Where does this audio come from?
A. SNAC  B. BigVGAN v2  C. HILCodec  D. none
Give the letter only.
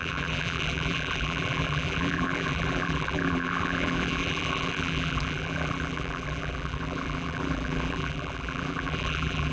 B